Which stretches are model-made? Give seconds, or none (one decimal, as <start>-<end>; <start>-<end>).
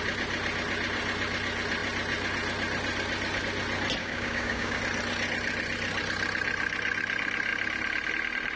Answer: 4.0-4.8